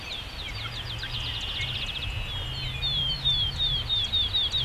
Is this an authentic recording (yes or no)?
yes